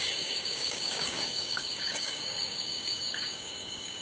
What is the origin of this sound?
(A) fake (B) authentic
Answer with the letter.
A